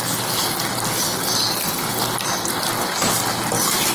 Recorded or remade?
recorded